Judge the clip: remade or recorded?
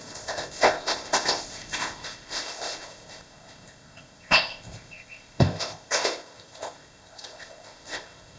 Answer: remade